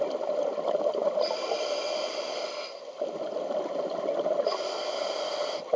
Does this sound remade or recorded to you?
recorded